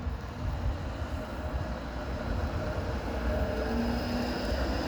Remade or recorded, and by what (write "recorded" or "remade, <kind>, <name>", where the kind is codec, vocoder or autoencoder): recorded